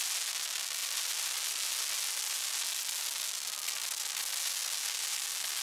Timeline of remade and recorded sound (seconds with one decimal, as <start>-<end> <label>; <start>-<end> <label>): 0.0-5.6 recorded